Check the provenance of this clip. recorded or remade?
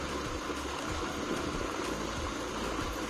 recorded